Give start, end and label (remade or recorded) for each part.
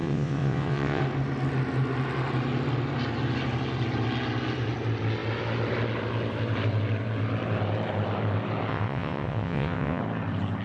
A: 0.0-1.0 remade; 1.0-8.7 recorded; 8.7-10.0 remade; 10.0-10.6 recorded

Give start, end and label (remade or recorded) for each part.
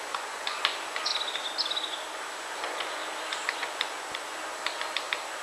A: 0.0-1.1 remade; 1.1-2.4 recorded; 2.4-3.0 remade; 3.0-3.5 recorded; 3.5-4.4 remade; 4.4-5.4 recorded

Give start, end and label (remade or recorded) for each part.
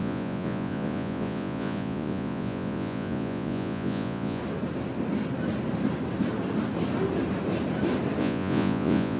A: 0.0-4.4 remade; 4.4-8.2 recorded; 8.2-9.2 remade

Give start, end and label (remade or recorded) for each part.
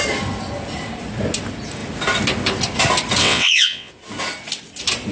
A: 0.0-3.2 recorded; 3.2-3.9 remade; 3.9-5.1 recorded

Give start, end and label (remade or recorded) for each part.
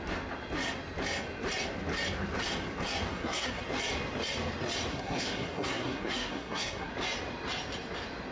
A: 0.0-3.1 recorded; 3.1-3.6 remade; 3.6-4.9 recorded; 4.9-6.9 remade; 6.9-8.3 recorded